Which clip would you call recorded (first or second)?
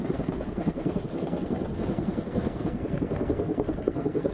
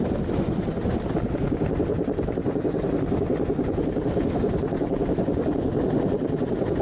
second